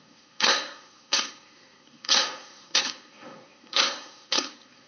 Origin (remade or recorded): remade